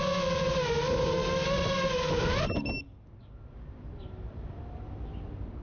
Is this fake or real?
real